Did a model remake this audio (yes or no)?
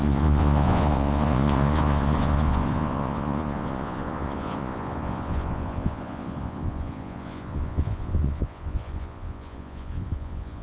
yes